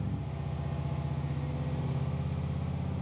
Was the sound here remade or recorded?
recorded